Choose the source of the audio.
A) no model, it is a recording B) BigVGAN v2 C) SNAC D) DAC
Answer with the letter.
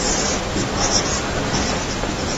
A